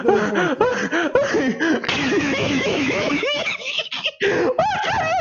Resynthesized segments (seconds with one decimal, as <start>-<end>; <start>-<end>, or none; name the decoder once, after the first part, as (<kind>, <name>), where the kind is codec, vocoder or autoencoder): 2.1-3.9 (autoencoder, DAC-VAE)